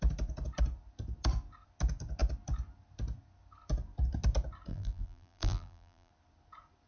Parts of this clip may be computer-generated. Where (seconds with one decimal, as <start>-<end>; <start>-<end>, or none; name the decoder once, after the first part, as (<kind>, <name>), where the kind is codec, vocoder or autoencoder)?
4.7-6.1 (vocoder, BigVGAN v2)